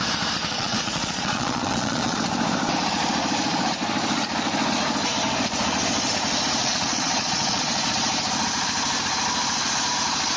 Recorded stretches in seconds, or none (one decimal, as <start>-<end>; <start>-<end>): 0.0-0.5; 2.2-6.6; 7.9-10.4